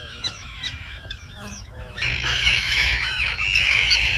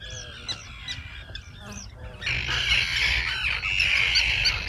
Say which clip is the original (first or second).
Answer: second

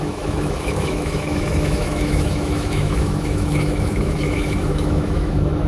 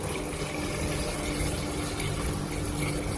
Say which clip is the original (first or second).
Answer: second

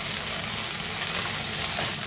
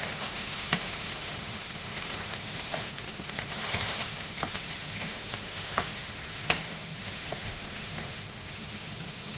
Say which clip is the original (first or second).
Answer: first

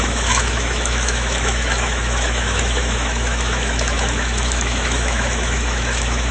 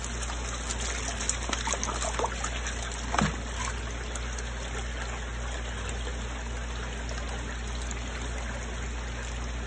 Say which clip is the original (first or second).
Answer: second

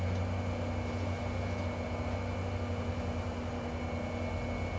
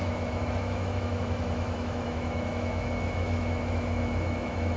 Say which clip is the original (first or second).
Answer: first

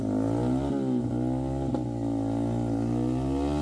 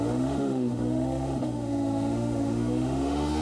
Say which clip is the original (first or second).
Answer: first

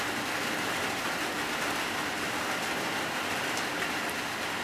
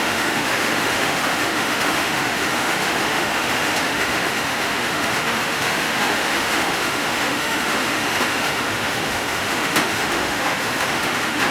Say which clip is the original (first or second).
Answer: first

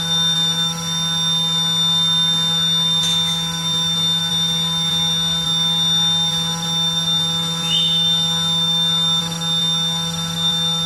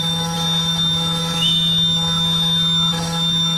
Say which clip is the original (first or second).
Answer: first